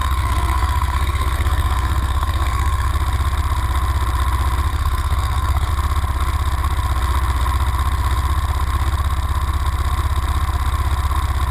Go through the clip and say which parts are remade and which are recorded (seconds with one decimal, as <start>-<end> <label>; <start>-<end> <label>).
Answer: 0.0-2.9 remade; 2.9-4.7 recorded; 4.7-5.7 remade; 5.7-11.5 recorded

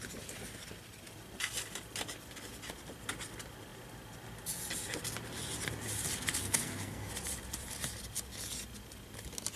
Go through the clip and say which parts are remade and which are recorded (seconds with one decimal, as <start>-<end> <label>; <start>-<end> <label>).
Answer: 0.0-6.4 recorded; 6.4-7.1 remade; 7.1-9.6 recorded